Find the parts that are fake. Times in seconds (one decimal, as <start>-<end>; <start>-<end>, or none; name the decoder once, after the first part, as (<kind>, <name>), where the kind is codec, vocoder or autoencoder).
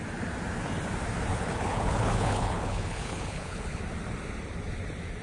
1.3-3.8 (codec, HILCodec)